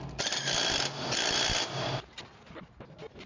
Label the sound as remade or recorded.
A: recorded